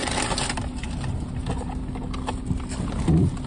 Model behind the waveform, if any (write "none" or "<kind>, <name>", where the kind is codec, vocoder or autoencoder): none